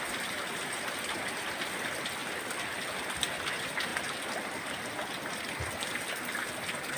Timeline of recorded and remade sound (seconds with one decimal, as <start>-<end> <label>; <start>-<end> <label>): 0.0-3.9 recorded; 3.9-5.5 remade; 5.5-7.0 recorded